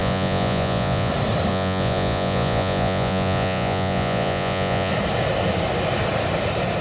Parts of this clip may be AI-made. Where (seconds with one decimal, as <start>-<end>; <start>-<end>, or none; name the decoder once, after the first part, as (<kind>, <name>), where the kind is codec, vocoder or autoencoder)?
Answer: 0.0-1.1 (vocoder, Vocos); 1.5-4.9